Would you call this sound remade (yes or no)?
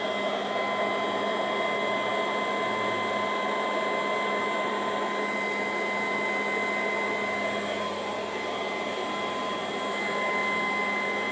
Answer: no